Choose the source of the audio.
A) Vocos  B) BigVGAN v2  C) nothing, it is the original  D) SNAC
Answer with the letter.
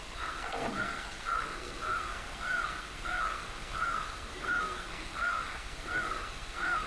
D